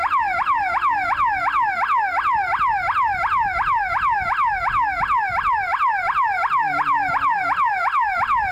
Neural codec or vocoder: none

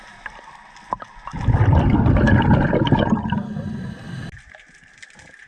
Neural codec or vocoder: none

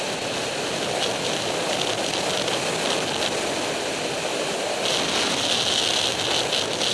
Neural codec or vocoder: none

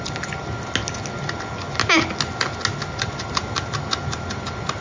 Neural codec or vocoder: none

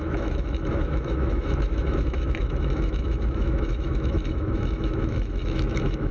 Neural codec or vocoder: autoencoder, DAC-VAE